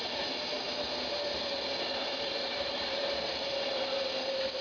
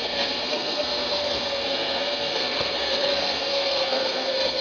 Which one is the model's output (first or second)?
second